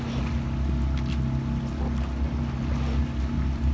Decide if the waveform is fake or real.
real